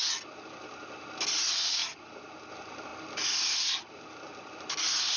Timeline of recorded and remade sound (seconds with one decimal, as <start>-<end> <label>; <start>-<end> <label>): 0.0-5.2 recorded